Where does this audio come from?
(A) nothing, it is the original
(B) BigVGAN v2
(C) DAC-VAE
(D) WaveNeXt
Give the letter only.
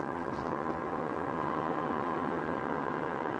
D